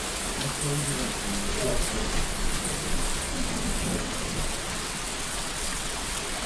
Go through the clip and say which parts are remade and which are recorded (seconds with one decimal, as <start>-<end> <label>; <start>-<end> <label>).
0.0-1.5 recorded; 1.5-2.2 remade; 2.2-3.3 recorded; 3.3-6.5 remade